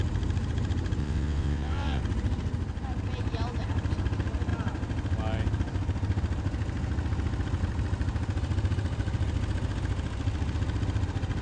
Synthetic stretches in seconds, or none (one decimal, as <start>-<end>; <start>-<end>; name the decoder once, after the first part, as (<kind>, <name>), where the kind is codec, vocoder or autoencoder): 1.0-2.0 (vocoder, WaveNeXt)